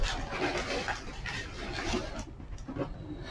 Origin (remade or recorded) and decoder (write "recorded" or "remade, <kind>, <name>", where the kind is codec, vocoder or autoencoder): remade, vocoder, BigVGAN v2